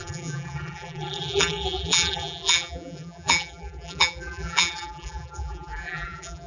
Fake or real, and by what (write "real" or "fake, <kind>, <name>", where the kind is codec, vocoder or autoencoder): fake, vocoder, BigVGAN v2